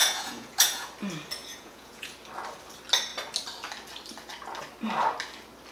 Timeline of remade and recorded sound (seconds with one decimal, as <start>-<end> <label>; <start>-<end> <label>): 0.0-0.9 remade; 0.9-1.4 recorded; 1.4-2.1 remade; 2.1-5.7 recorded